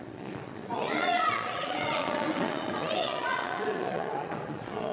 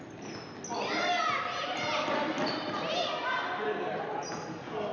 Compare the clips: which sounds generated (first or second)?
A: first